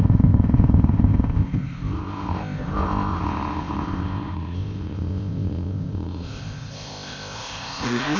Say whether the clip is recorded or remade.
remade